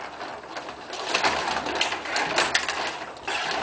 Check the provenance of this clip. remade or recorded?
recorded